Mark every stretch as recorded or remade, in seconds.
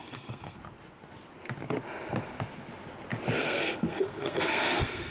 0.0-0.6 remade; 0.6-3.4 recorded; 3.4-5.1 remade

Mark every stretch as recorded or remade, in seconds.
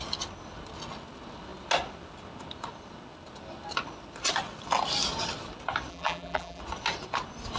0.0-5.9 recorded; 5.9-6.6 remade; 6.6-7.6 recorded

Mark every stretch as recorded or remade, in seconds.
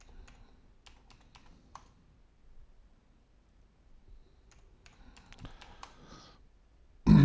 0.0-7.2 recorded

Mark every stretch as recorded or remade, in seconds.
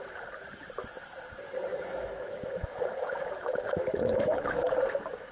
0.0-1.7 recorded; 1.7-4.8 remade; 4.8-5.3 recorded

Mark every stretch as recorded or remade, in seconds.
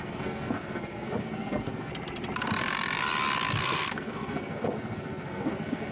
0.0-1.9 remade; 1.9-3.6 recorded; 3.6-5.9 remade